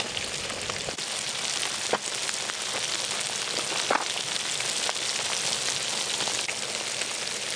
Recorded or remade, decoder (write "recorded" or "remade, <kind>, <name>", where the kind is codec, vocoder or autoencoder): recorded